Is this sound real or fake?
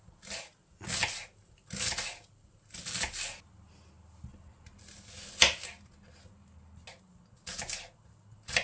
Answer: real